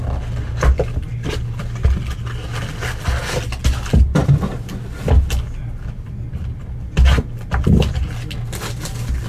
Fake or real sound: real